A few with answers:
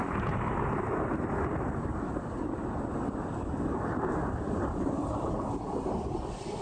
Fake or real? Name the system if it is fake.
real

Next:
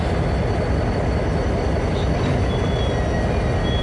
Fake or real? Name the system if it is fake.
real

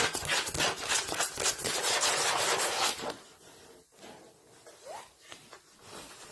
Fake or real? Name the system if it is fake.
real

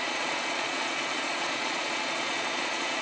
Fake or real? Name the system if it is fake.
fake, vocoder, Vocos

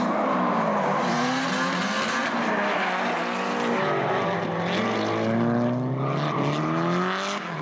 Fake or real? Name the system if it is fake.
real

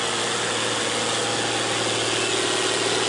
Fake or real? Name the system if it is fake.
real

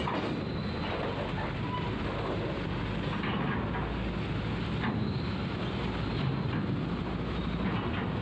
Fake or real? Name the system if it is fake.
real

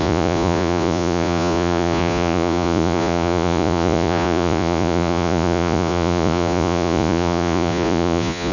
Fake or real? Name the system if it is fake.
fake, vocoder, Vocos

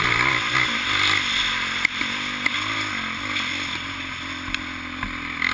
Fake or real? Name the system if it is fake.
real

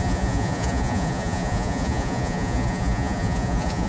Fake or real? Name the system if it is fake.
fake, vocoder, Vocos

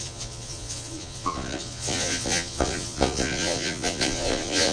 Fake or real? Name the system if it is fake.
fake, vocoder, Vocos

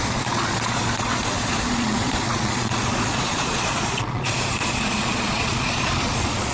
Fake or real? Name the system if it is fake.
fake, vocoder, Vocos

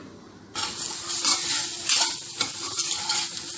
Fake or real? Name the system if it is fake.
real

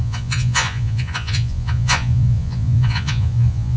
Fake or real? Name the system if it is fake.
fake, vocoder, Vocos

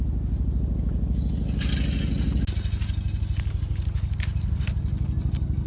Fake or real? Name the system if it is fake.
real